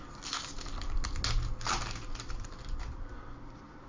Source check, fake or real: real